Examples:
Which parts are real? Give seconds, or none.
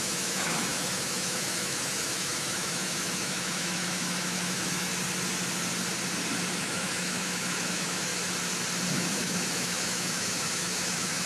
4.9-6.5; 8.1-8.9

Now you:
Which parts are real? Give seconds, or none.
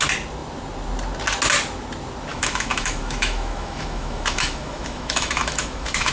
0.0-2.3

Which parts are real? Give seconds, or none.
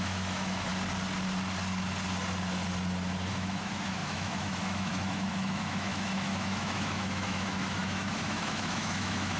0.7-3.3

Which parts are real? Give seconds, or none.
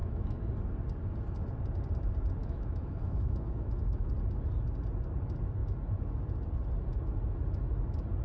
0.5-2.4; 4.1-8.2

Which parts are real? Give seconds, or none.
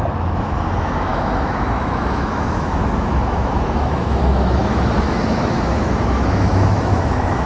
none